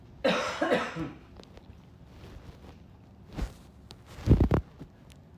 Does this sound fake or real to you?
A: real